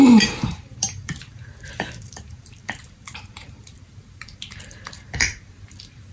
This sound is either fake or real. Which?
fake